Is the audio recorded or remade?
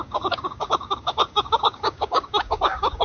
remade